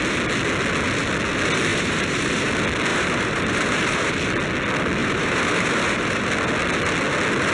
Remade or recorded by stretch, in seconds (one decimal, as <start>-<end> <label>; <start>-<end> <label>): 0.0-1.7 recorded; 1.7-2.5 remade; 2.5-2.9 recorded; 2.9-4.1 remade; 4.1-5.0 recorded; 5.0-6.3 remade; 6.3-7.5 recorded